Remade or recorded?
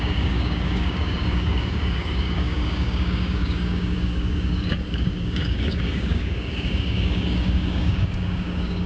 remade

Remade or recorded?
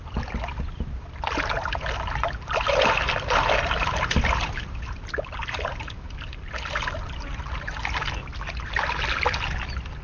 recorded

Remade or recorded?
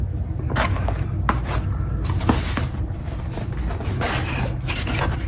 recorded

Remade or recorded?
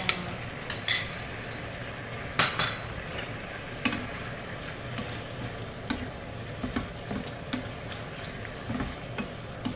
recorded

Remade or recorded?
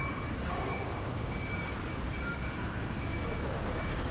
remade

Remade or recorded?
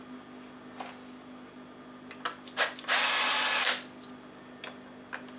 recorded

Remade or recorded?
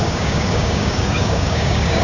remade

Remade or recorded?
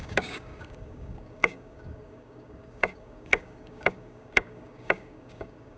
remade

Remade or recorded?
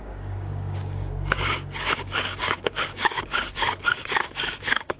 remade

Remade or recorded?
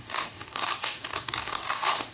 remade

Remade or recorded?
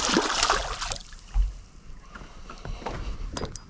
recorded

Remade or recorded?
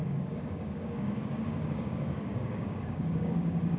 remade